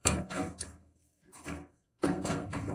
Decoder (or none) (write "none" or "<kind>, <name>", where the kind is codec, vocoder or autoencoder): codec, SNAC